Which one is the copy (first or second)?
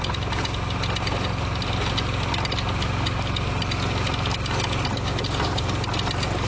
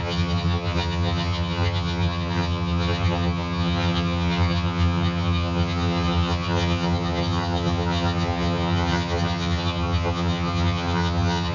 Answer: second